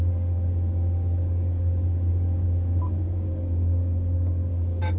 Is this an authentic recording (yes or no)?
no